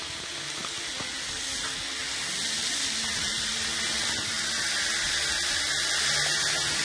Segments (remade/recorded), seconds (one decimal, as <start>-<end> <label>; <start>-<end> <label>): 0.0-6.8 recorded

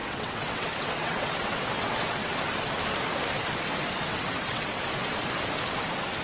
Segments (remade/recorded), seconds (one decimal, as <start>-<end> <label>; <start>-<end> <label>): 0.0-2.4 remade; 2.4-4.1 recorded; 4.1-4.8 remade; 4.8-6.2 recorded

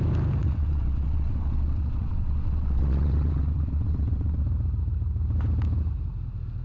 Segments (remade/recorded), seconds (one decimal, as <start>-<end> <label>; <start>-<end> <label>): 0.0-0.4 recorded; 0.4-4.4 remade; 4.4-6.6 recorded

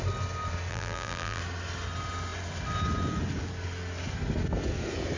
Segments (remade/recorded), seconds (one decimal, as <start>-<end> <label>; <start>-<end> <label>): 0.0-0.7 recorded; 0.7-1.4 remade; 1.4-5.2 recorded